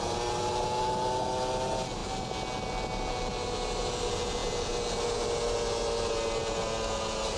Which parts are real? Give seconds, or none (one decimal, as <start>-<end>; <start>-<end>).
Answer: 0.0-7.4